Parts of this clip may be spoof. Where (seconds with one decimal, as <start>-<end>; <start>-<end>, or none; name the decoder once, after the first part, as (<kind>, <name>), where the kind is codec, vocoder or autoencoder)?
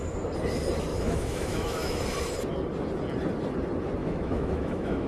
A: 0.9-2.0 (autoencoder, DAC-VAE); 4.0-5.1